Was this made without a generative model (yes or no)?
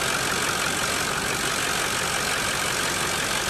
yes